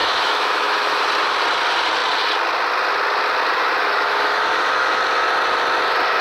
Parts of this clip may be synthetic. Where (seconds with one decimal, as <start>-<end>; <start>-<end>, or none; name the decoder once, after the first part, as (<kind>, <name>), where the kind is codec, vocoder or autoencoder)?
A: 0.0-1.0 (autoencoder, DAC-VAE); 3.8-5.0